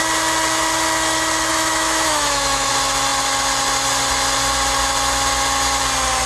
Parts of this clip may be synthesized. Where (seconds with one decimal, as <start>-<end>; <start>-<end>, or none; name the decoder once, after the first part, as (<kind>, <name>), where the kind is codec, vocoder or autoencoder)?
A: 1.5-2.7 (autoencoder, DAC-VAE)